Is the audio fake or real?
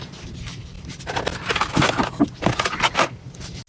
real